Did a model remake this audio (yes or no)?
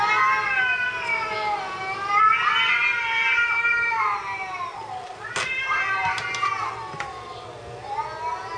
no